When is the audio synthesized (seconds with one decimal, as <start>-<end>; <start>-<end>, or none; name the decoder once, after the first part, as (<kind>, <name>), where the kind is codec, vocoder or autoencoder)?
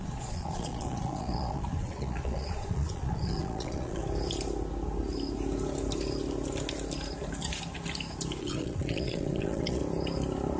0.0-4.0 (vocoder, Vocos); 8.4-9.8